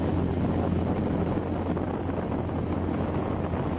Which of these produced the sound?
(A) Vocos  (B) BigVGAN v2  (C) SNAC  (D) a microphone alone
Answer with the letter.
D